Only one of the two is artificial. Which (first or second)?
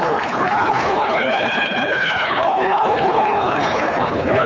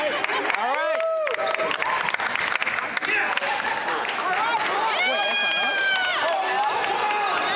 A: first